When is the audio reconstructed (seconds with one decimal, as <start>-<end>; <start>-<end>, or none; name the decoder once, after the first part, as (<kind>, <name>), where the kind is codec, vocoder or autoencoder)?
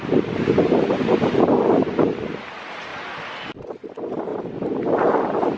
none